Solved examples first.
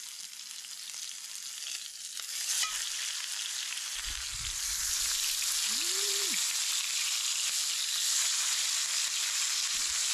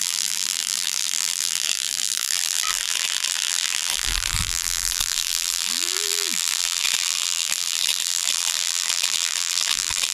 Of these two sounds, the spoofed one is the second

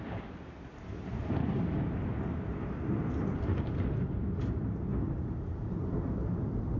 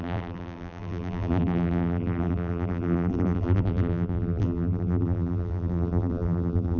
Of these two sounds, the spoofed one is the second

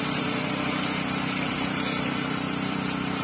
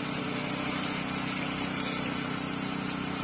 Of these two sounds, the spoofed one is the first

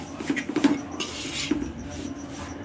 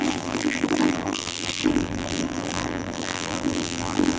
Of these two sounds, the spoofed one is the second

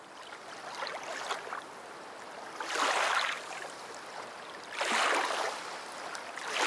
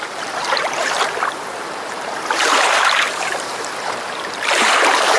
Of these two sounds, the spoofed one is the second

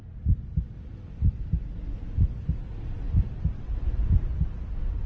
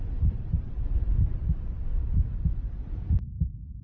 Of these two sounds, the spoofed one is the second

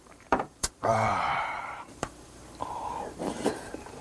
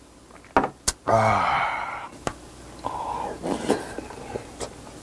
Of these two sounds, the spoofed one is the first